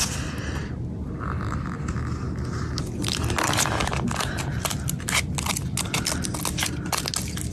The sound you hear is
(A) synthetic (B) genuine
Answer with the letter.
B